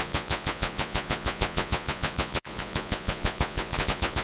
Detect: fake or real fake